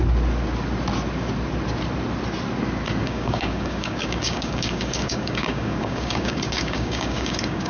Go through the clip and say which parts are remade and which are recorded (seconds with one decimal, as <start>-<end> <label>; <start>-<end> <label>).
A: 0.0-3.0 recorded; 3.0-7.7 remade